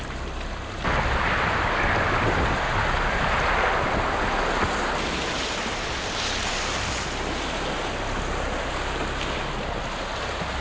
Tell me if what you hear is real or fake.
real